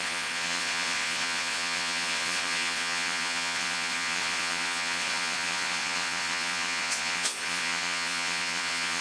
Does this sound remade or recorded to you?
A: remade